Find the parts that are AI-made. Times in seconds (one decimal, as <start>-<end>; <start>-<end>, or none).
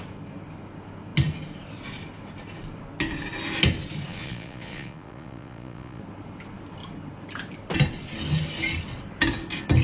4.1-6.0